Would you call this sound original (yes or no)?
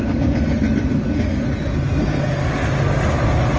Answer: yes